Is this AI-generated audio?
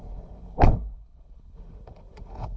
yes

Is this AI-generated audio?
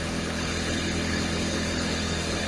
yes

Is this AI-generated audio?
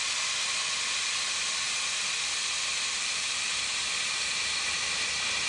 no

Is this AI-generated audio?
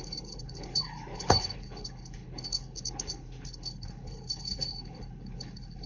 yes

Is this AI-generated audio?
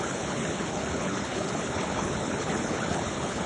yes